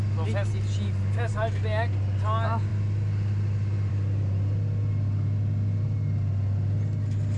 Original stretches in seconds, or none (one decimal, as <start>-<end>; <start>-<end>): 0.0-7.4